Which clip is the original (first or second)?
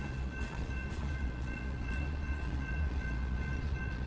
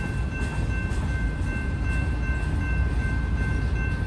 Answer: second